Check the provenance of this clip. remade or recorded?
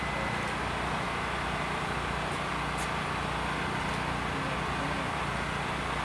recorded